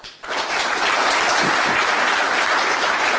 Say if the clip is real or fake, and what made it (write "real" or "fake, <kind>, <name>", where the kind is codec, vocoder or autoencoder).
real